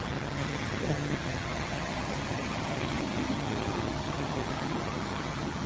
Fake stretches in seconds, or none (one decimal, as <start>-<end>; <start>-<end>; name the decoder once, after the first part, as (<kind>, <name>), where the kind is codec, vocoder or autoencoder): 0.0-5.7 (vocoder, HiFi-GAN)